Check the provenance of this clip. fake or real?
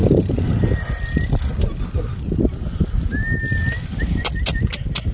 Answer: real